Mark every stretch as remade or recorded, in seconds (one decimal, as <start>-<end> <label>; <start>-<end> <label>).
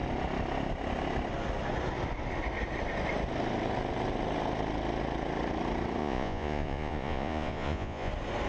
0.0-6.0 recorded; 6.0-8.1 remade; 8.1-8.5 recorded